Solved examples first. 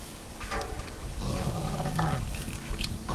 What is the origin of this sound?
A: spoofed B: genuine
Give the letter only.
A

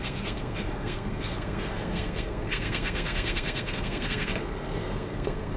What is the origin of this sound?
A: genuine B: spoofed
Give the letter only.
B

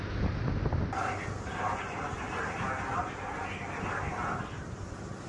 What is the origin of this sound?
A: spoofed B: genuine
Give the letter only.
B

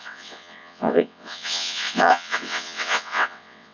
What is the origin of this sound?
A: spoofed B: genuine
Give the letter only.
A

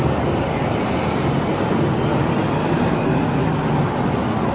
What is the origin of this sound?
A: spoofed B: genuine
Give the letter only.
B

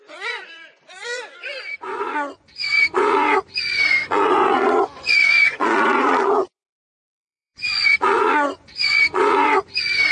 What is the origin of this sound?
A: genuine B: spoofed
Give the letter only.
B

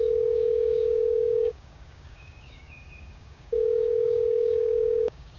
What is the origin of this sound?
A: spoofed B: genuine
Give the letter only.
A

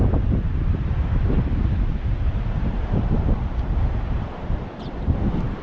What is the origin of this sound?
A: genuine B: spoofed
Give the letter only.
B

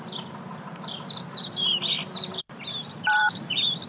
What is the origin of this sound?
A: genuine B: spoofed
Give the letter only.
B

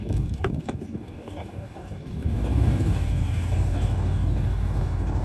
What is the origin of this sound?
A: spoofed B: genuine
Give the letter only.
A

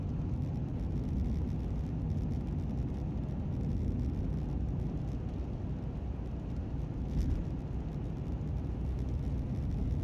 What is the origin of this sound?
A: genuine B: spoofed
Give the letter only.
A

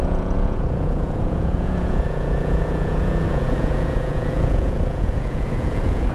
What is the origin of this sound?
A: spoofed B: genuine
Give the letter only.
A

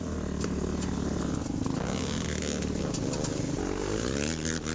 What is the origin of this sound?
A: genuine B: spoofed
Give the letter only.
A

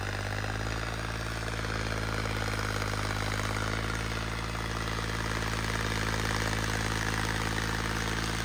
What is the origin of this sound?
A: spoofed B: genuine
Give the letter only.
B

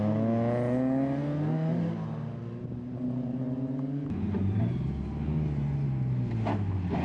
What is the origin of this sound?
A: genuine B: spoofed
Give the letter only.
A